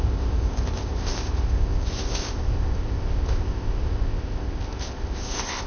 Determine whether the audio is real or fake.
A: fake